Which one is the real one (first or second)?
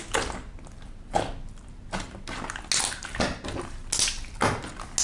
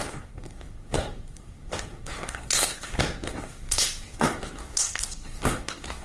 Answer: first